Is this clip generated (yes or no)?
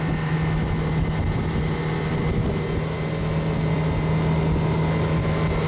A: no